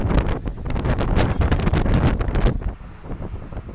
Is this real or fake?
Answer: real